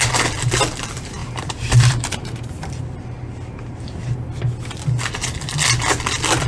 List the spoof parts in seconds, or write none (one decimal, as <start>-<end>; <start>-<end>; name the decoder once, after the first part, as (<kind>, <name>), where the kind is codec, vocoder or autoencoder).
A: 1.2-4.0 (vocoder, BigVGAN v2)